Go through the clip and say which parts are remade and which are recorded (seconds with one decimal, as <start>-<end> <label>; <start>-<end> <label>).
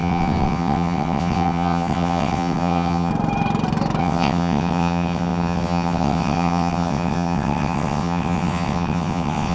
0.0-3.1 remade; 3.1-4.0 recorded; 4.0-9.5 remade